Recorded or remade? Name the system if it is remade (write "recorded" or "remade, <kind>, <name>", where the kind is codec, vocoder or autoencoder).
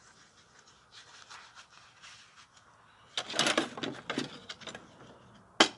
recorded